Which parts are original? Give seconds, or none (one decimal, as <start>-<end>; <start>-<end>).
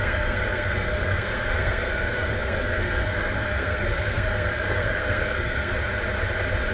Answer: 5.7-6.7